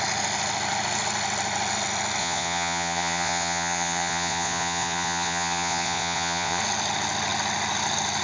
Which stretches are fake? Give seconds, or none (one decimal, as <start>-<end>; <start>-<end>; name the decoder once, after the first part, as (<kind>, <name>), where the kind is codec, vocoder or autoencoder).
2.2-6.6 (vocoder, Vocos)